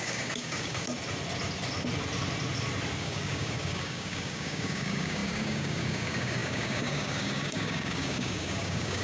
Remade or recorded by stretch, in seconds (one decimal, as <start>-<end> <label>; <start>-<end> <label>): 0.0-0.9 remade; 0.9-3.0 recorded; 3.0-9.0 remade